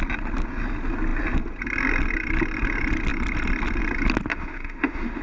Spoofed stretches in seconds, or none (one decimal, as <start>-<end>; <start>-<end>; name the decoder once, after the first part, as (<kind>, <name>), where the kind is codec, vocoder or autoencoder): 4.3-5.2 (autoencoder, DAC-VAE)

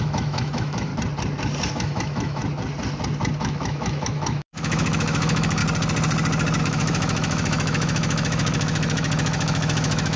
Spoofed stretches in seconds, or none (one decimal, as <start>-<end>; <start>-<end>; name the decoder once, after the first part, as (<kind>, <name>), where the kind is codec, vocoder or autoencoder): 0.0-0.9 (autoencoder, DAC-VAE); 1.7-2.4; 3.4-5.6; 6.6-10.2

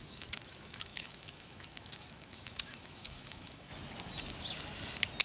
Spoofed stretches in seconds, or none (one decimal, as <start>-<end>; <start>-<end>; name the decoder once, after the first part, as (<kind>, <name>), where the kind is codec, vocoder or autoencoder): 0.0-3.7 (autoencoder, DAC-VAE)

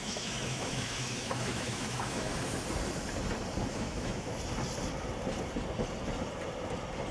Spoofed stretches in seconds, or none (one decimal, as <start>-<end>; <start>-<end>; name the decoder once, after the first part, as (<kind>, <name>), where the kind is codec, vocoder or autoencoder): 0.0-2.3 (autoencoder, DAC-VAE); 3.7-4.3